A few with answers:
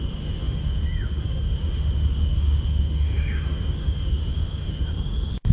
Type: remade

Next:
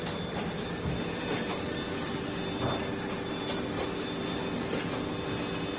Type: recorded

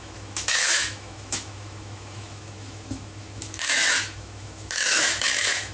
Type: remade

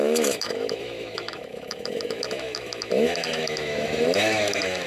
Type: remade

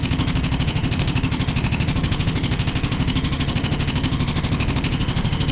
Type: remade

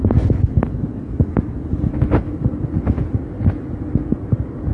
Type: recorded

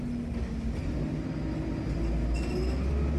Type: recorded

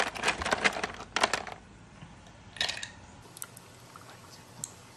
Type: recorded